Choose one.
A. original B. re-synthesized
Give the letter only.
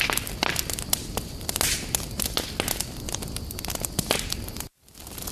A